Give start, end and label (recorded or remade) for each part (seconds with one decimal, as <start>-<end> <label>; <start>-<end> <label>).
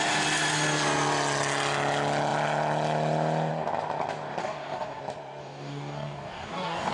0.0-4.4 recorded; 4.4-5.0 remade; 5.0-5.4 recorded; 5.4-6.9 remade